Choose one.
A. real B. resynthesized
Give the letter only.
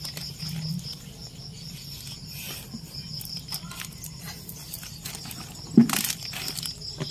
A